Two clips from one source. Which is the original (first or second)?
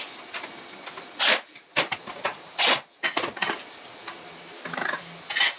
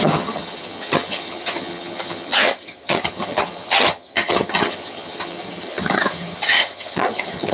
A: first